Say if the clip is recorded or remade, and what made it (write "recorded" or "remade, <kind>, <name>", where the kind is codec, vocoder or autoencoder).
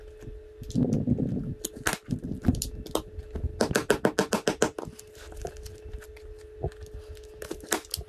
recorded